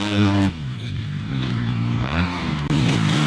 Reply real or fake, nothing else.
fake